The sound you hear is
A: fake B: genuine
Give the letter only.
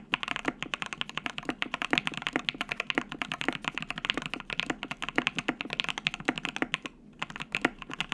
B